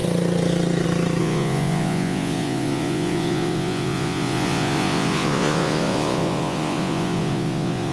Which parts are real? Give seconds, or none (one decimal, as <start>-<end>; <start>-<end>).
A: 0.0-1.2